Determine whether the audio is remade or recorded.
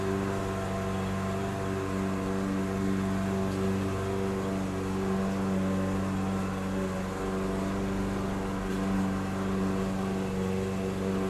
recorded